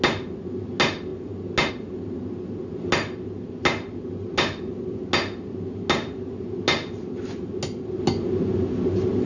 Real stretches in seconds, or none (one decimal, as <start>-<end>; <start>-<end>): 0.0-9.3